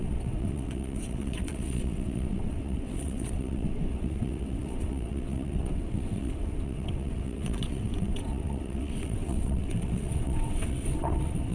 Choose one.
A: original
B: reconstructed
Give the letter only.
B